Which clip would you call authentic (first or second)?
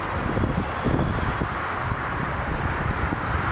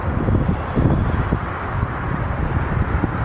second